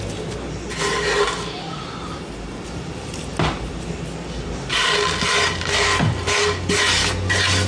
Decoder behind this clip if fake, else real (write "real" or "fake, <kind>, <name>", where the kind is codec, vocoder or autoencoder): real